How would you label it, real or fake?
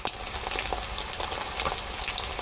real